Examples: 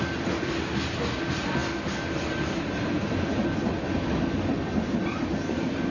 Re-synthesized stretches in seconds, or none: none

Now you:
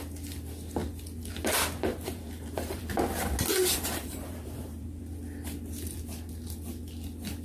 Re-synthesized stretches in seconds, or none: 1.9-2.8 (vocoder, BigVGAN v2); 3.6-5.0

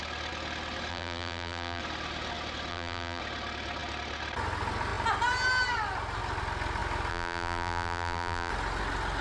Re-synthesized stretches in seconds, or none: 0.9-1.8 (vocoder, BigVGAN v2); 2.7-3.2; 7.1-8.5

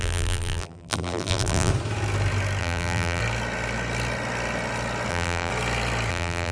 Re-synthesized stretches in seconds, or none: 0.0-1.7 (vocoder, BigVGAN v2); 2.6-3.2; 5.1-5.5; 6.1-6.5

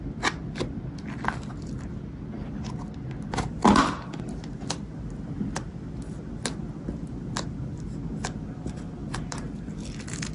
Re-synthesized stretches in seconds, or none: 9.0-9.6 (vocoder, BigVGAN v2)

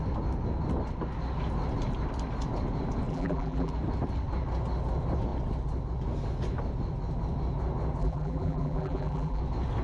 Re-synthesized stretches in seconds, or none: 3.1-3.7 (vocoder, BigVGAN v2); 8.0-9.4

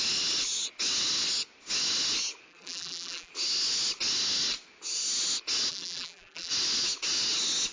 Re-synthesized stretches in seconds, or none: 2.5-3.3 (vocoder, BigVGAN v2); 5.7-6.5